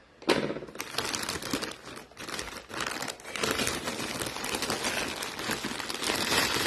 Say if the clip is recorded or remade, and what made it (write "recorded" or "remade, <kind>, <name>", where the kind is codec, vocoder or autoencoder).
recorded